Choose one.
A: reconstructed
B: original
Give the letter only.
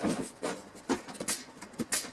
A